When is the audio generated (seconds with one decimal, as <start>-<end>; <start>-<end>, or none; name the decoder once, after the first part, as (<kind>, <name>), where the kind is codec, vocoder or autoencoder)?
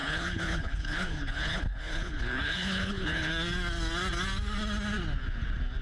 0.0-3.3 (codec, HILCodec)